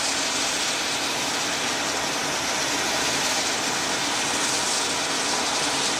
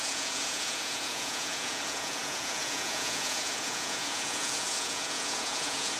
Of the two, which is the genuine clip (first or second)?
first